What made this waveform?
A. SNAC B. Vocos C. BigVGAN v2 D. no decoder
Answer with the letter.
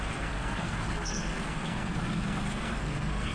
A